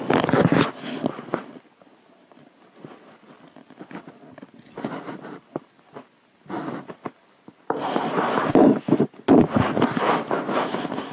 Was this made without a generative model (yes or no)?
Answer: yes